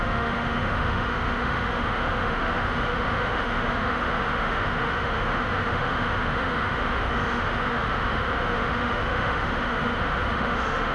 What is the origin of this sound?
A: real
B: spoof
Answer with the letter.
B